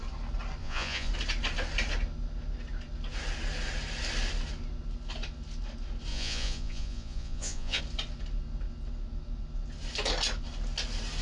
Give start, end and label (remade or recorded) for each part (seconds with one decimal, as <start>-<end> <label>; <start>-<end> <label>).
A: 0.0-0.6 recorded; 0.6-1.1 remade; 1.1-6.1 recorded; 6.1-7.8 remade; 7.8-11.2 recorded